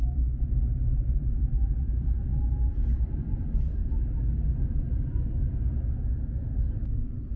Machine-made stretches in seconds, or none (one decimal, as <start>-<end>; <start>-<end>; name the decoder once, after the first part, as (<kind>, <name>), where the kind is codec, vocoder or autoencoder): 0.0-2.3 (vocoder, BigVGAN v2); 3.0-3.8; 4.5-5.4

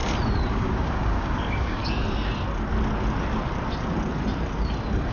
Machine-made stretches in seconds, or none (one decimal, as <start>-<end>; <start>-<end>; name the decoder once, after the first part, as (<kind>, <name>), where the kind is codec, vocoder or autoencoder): 0.5-1.8 (codec, DAC)

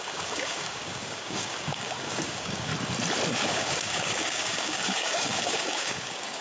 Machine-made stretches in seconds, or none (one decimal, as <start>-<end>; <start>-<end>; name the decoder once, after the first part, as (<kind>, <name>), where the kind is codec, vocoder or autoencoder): 0.0-2.7 (codec, DAC); 3.3-6.4